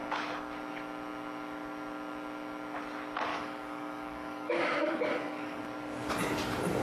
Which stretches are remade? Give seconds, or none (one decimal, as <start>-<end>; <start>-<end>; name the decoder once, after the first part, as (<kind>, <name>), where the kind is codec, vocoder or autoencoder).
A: 3.3-5.6 (codec, DAC)